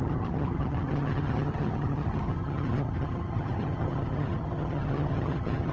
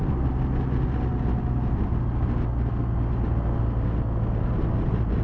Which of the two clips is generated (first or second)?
first